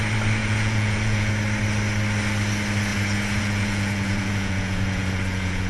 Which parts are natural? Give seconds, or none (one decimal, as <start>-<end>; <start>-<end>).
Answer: 0.0-0.4; 1.3-2.9